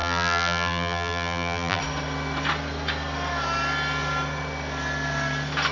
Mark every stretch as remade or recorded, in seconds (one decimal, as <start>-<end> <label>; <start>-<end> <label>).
0.0-1.8 remade; 1.8-5.7 recorded